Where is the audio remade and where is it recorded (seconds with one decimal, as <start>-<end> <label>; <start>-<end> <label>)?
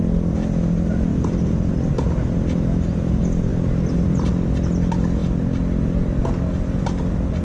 0.0-3.5 recorded; 3.5-4.3 remade; 4.3-7.4 recorded